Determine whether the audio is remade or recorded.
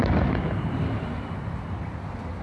recorded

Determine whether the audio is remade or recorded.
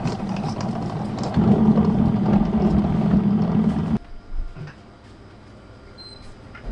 recorded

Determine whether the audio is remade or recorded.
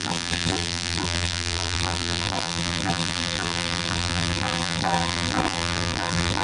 remade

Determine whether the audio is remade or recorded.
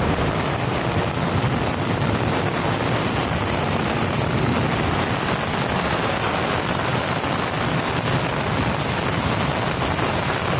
recorded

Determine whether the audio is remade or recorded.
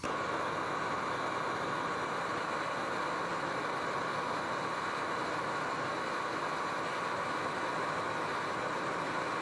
recorded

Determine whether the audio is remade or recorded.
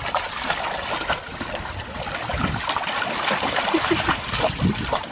recorded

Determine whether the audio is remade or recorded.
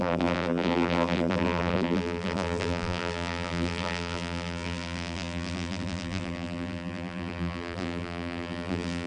remade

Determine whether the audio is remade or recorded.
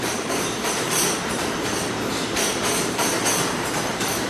remade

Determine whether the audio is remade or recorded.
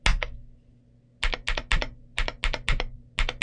recorded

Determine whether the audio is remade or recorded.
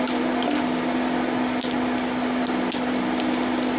remade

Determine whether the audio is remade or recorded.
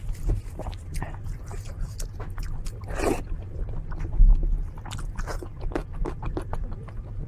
recorded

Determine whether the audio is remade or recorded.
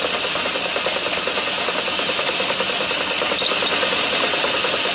recorded